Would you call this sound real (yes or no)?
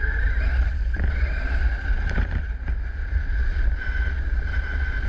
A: yes